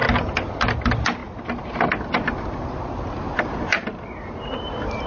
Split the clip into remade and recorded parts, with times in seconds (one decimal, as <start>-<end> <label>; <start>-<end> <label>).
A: 0.0-5.1 recorded